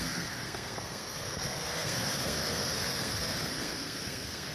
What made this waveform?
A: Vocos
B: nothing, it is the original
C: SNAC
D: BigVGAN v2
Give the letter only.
C